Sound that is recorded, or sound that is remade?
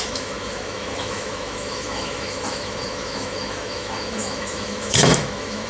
remade